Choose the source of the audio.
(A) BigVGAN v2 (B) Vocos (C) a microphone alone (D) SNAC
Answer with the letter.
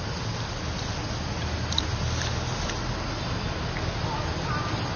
C